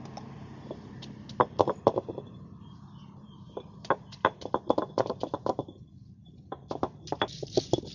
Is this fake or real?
fake